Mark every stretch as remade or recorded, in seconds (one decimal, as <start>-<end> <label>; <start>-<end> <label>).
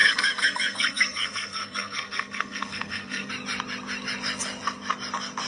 0.0-3.3 remade; 3.3-5.5 recorded